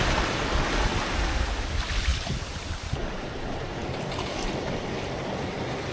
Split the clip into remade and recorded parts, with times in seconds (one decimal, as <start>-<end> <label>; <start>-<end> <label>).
0.0-5.9 recorded